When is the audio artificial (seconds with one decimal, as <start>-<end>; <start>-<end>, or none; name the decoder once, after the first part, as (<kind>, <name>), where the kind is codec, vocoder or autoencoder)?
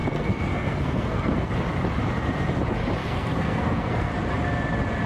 0.0-1.5 (codec, SNAC); 3.0-4.1